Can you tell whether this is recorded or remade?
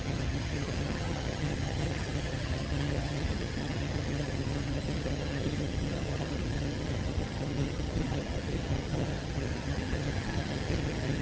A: remade